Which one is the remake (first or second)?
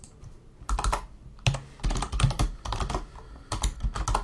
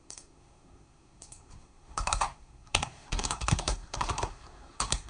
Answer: second